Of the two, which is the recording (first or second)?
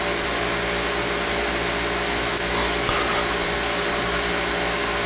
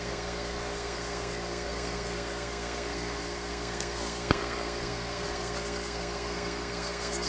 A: first